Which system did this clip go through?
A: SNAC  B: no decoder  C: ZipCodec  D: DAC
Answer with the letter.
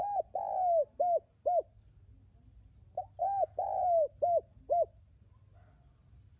B